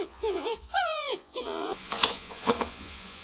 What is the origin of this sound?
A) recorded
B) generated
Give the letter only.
B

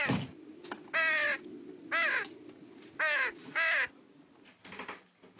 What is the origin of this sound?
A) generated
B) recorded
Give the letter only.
B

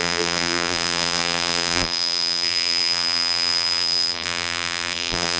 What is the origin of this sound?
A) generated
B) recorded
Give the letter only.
A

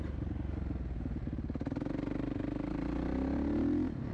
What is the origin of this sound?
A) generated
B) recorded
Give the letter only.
B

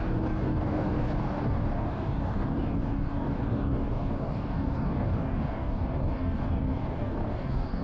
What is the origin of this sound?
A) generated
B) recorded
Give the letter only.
A